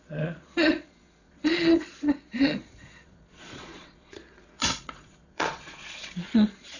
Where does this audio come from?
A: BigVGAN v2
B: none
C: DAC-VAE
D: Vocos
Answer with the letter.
D